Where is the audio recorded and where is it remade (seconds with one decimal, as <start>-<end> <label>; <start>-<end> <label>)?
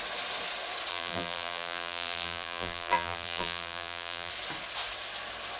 0.0-0.9 recorded; 0.9-4.3 remade; 4.3-5.6 recorded